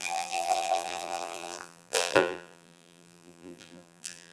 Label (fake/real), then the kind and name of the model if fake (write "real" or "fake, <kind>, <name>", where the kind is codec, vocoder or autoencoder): fake, vocoder, BigVGAN v2